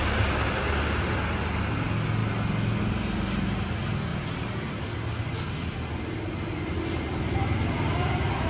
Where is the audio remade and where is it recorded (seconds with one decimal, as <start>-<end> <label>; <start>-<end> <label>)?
0.0-8.5 recorded